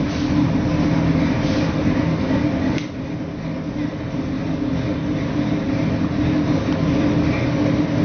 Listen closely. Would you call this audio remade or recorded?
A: recorded